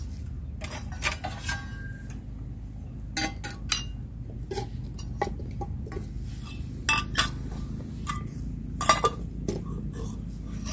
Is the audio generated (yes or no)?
no